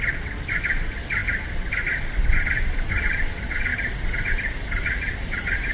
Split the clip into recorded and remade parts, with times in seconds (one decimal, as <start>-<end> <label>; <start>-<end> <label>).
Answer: 0.0-5.7 recorded